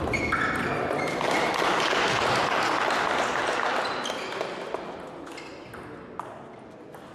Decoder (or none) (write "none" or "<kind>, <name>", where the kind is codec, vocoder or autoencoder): none